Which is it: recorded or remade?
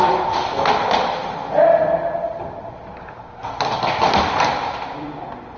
recorded